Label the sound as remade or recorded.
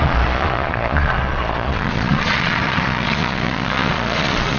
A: remade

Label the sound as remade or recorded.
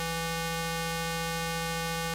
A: recorded